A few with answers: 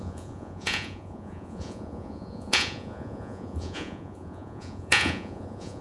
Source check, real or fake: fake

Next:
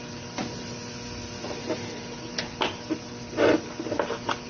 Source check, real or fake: real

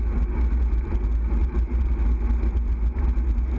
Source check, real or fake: real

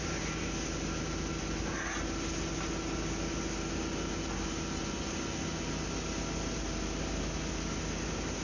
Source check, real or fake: real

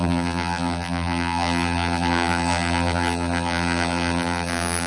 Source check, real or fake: fake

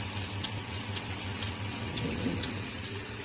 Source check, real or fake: fake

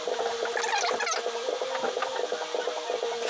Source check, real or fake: real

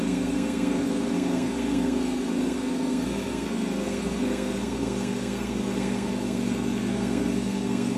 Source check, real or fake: fake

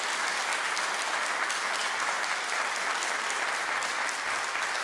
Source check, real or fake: real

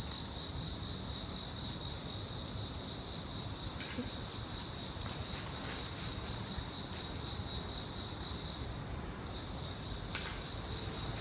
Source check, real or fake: real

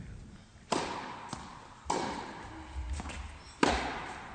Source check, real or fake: real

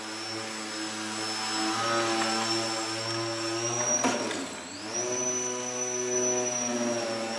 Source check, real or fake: real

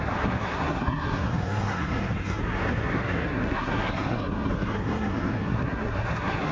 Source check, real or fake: fake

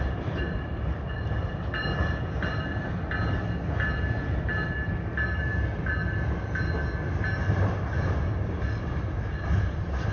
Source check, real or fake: real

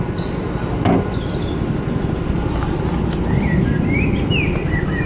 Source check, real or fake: real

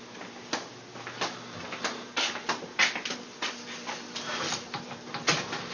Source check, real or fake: real